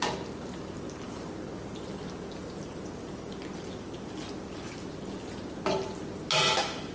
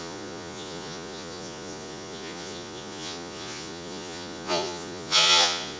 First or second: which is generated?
second